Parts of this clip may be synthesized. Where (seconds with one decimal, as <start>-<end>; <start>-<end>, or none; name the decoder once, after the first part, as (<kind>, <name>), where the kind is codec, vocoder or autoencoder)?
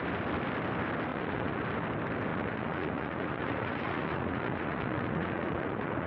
1.1-1.6 (vocoder, Vocos); 2.3-6.1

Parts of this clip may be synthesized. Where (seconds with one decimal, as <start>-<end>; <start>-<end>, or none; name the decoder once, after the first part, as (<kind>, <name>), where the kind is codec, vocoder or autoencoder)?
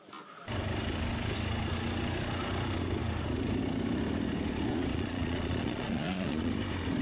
4.9-6.5 (vocoder, Vocos)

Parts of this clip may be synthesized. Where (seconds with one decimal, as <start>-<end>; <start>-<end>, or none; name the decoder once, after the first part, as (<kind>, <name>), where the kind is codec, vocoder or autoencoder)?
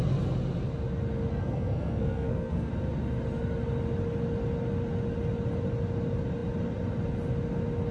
1.3-2.7 (codec, SNAC)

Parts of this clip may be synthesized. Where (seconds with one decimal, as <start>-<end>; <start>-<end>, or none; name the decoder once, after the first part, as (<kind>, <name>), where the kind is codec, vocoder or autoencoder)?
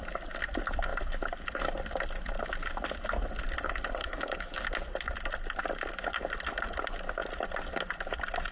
4.0-4.6 (autoencoder, DAC-VAE)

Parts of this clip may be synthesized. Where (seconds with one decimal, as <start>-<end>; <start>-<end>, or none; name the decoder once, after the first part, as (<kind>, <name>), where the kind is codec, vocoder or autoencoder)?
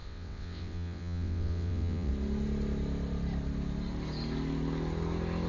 0.0-2.1 (vocoder, WaveNeXt)